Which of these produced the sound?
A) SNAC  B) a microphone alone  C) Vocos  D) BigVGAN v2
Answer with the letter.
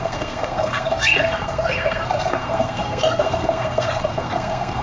A